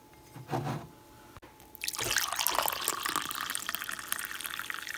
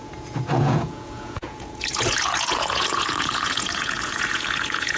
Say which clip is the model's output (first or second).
second